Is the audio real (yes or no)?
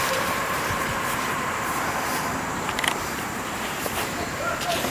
no